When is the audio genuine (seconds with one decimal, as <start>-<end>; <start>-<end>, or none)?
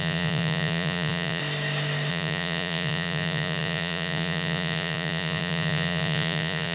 1.4-2.1